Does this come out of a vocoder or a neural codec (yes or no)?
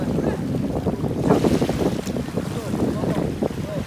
no